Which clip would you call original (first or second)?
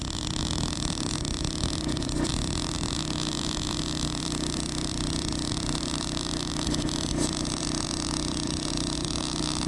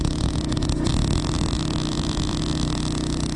second